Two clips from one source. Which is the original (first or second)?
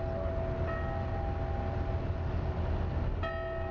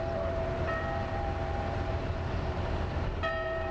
first